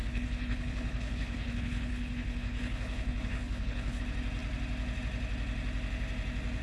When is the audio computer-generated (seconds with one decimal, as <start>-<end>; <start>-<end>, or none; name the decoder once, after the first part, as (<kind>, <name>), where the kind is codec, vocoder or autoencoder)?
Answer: 0.0-4.0 (codec, HILCodec)